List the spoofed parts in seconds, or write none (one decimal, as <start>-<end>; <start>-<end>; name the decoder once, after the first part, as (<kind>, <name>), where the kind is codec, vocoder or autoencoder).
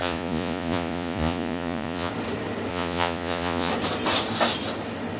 0.0-2.1 (vocoder, Vocos); 2.7-3.7